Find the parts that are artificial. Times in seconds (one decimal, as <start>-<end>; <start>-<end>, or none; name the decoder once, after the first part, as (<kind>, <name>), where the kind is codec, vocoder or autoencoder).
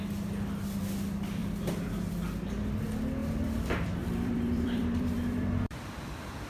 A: 1.4-2.1 (vocoder, BigVGAN v2); 3.2-6.5